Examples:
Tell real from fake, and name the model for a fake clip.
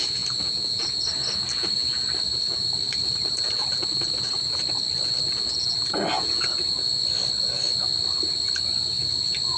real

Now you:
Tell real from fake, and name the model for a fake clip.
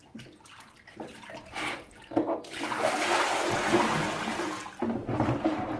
real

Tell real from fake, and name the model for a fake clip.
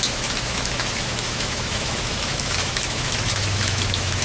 fake, autoencoder, DAC-VAE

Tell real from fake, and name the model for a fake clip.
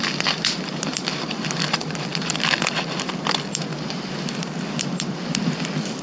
fake, vocoder, BigVGAN v2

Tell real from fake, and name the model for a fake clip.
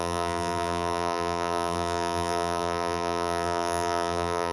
fake, vocoder, BigVGAN v2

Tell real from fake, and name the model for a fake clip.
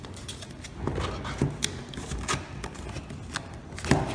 real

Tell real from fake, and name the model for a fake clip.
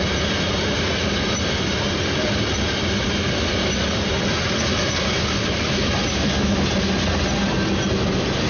real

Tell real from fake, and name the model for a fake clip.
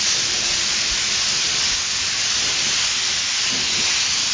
real